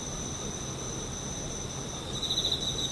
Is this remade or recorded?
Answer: recorded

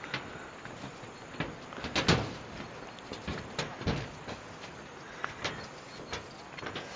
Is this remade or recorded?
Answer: recorded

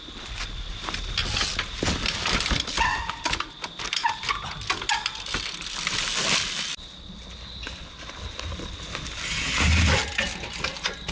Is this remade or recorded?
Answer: recorded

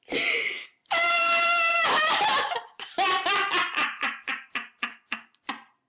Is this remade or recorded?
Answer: remade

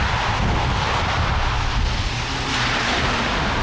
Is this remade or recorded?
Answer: recorded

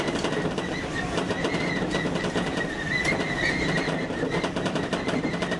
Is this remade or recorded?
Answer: recorded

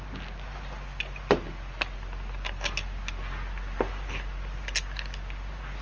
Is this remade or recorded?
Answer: recorded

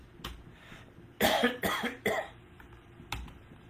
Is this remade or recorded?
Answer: recorded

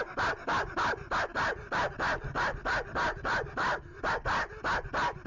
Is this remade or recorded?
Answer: recorded